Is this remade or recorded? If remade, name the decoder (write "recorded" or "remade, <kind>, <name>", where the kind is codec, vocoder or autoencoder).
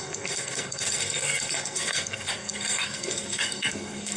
remade, codec, SNAC